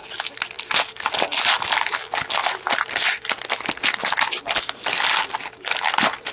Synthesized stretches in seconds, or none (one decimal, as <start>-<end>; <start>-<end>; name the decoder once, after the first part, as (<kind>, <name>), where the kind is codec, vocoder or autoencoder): none

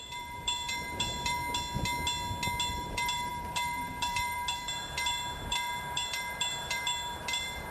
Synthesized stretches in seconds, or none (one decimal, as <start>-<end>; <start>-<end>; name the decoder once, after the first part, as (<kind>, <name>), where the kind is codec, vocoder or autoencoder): 0.0-1.4 (vocoder, BigVGAN v2); 2.7-7.7